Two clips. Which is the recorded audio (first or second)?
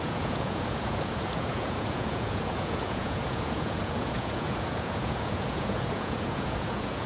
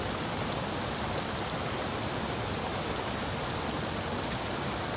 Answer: second